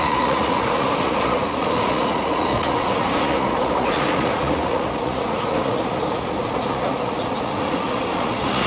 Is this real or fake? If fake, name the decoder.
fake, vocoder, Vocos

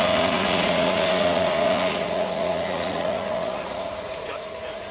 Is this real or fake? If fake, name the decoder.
fake, vocoder, Vocos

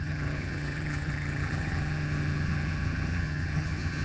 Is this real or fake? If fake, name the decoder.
fake, vocoder, HiFi-GAN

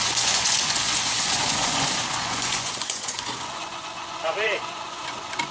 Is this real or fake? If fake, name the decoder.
fake, vocoder, Vocos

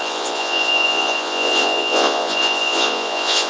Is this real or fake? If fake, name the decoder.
fake, vocoder, Vocos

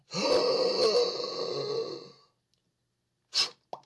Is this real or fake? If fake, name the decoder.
real